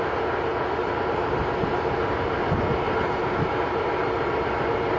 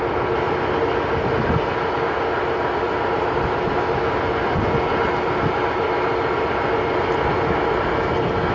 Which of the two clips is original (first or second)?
second